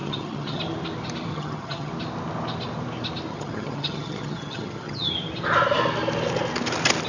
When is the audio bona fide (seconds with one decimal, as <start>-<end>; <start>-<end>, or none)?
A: 0.6-1.3; 1.9-3.3; 5.1-7.1